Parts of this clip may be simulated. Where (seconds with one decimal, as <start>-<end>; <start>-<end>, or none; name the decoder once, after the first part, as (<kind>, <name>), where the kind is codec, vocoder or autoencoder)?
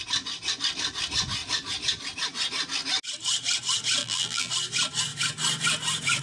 4.0-4.5 (vocoder, BigVGAN v2)